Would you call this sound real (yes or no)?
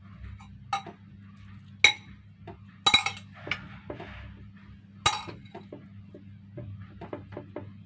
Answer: yes